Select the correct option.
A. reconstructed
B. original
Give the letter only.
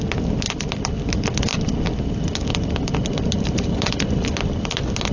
B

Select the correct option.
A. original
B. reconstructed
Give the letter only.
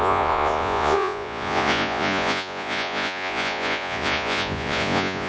B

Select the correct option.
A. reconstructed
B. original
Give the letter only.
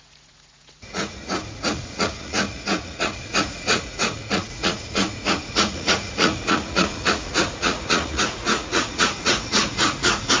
A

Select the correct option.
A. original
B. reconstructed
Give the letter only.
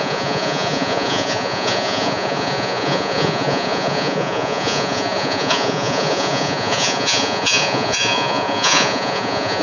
B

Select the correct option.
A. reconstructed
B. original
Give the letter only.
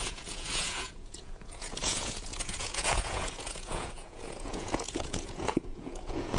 A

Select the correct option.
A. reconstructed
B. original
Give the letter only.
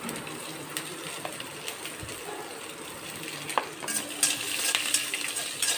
B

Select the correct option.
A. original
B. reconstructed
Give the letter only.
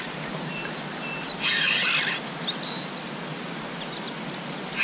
A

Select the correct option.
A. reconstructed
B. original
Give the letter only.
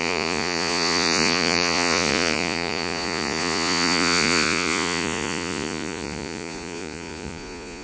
A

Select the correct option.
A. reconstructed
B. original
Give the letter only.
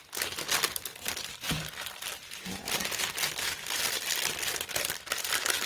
B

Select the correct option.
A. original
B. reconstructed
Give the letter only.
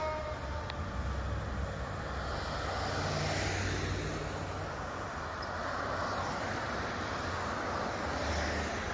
A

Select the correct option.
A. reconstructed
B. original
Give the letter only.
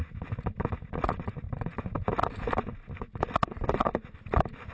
B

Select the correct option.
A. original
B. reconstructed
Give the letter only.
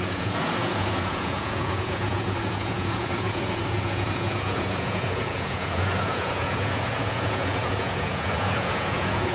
B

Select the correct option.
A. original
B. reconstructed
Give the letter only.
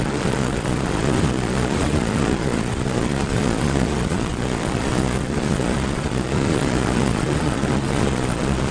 B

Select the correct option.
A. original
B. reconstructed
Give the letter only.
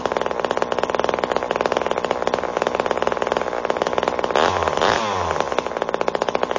A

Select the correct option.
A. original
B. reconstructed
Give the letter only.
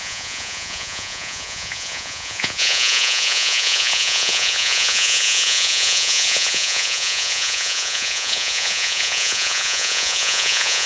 B